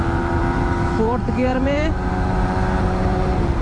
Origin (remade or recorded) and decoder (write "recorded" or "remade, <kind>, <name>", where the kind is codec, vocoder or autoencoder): remade, vocoder, BigVGAN v2